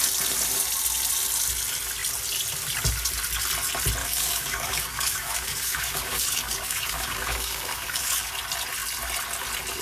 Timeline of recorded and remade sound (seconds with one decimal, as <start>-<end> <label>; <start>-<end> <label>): 0.0-4.0 recorded; 4.0-8.3 remade; 8.3-9.8 recorded